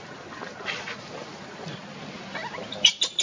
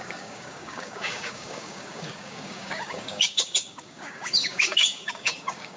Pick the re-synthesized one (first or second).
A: second